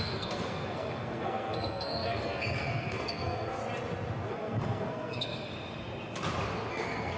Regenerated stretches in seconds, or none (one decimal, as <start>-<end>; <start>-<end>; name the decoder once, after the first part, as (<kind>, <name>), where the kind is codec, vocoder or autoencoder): 0.0-3.6 (codec, SNAC); 4.3-5.5; 6.7-7.2